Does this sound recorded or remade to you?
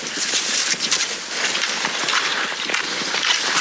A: recorded